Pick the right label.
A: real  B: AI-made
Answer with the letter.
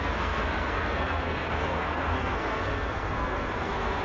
B